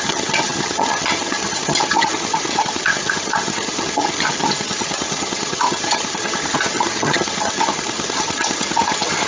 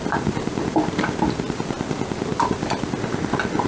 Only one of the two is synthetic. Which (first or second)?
first